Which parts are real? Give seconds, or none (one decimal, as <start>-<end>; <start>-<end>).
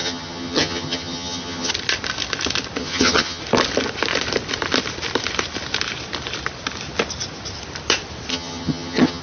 1.7-2.8; 3.4-8.3